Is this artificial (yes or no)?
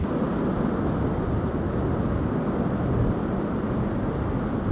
no